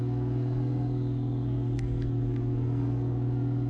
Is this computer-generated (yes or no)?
yes